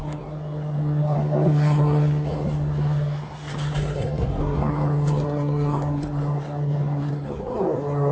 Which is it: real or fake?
fake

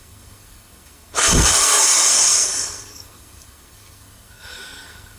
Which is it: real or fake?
fake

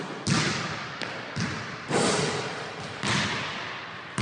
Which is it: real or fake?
real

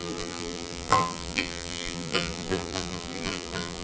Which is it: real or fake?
fake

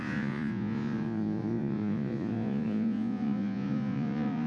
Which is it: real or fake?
fake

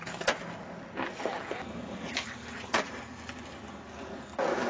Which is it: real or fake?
real